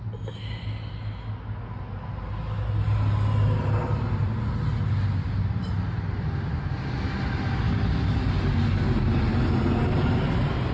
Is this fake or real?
real